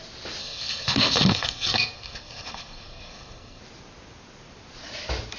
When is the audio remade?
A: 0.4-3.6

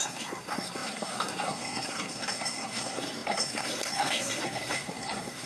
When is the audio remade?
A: 0.0-5.5

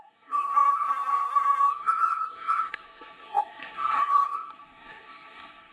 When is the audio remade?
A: 0.0-5.7